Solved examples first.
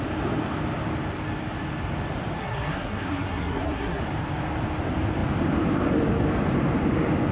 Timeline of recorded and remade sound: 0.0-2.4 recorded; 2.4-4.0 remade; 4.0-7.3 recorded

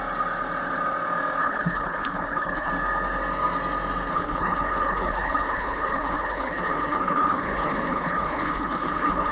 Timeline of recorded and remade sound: 0.0-1.4 recorded; 1.4-2.7 remade; 2.7-4.1 recorded; 4.1-9.3 remade

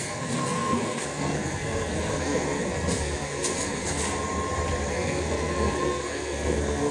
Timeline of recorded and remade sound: 0.0-4.0 remade; 4.0-4.9 recorded; 4.9-6.9 remade

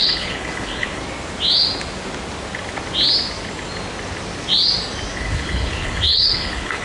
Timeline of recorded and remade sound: 0.0-1.0 remade; 1.0-5.1 recorded; 5.1-6.8 remade

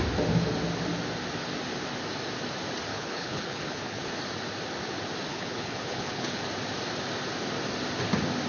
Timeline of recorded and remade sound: 0.0-2.9 recorded; 2.9-4.1 remade; 4.1-5.3 recorded; 5.3-6.4 remade; 6.4-8.5 recorded